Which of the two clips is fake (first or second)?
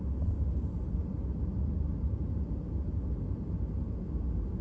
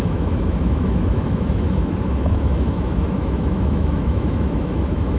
second